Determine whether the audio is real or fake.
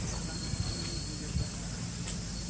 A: real